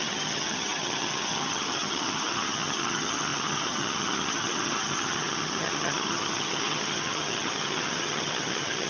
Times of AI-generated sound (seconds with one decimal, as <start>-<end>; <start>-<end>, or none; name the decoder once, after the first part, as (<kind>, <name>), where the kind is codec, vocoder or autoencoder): 0.0-8.9 (vocoder, HiFi-GAN)